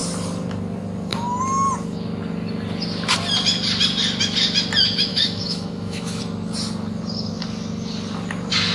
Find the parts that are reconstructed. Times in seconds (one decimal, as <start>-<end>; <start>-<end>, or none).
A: 5.1-6.2